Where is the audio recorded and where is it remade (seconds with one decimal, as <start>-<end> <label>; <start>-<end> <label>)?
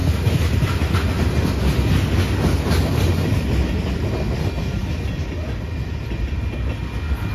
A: 0.0-7.3 recorded